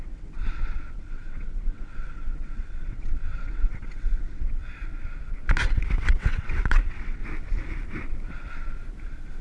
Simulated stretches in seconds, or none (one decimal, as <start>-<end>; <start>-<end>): 0.0-4.6; 5.7-7.2